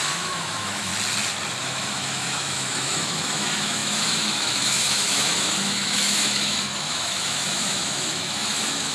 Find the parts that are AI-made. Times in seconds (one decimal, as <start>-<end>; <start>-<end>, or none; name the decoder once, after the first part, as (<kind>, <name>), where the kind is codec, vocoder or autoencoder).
0.0-0.9 (autoencoder, DAC-VAE); 1.6-8.9